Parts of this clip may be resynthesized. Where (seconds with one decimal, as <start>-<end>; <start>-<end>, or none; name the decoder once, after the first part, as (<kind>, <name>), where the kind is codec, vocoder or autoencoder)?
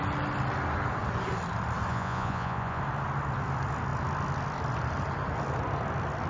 1.9-2.8 (vocoder, Vocos)